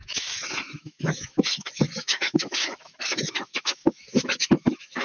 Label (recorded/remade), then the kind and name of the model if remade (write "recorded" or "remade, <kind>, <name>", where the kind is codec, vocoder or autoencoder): remade, autoencoder, DAC-VAE